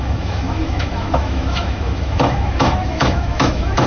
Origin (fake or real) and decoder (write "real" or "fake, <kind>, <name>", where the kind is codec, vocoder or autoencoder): fake, autoencoder, DAC-VAE